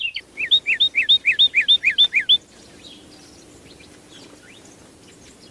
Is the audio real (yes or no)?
yes